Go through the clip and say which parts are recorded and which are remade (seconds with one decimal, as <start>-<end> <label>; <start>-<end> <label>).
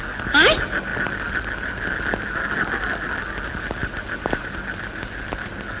0.0-5.8 recorded